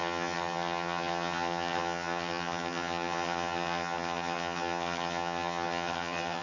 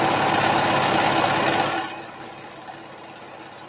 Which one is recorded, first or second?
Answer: second